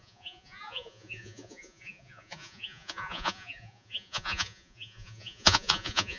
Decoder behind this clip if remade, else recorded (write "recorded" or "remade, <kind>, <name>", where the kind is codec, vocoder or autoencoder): remade, vocoder, Vocos